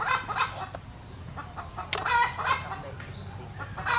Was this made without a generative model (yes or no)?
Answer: yes